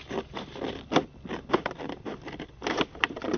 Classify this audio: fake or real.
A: real